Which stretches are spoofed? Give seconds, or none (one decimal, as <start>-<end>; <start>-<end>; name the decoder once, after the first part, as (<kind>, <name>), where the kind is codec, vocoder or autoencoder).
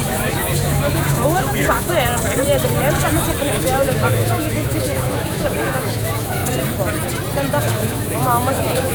0.0-1.9 (autoencoder, DAC-VAE); 3.4-6.4; 7.6-8.9